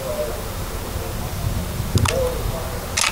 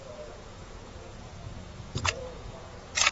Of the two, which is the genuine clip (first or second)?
first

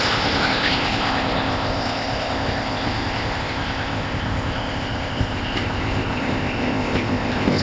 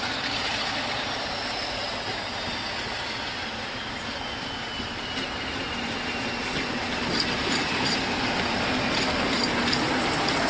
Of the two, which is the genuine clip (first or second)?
second